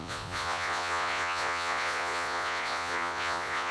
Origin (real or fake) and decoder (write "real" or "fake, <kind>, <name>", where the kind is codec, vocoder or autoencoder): fake, vocoder, Vocos